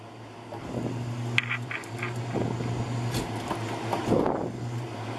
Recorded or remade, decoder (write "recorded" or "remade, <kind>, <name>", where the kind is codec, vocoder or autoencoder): recorded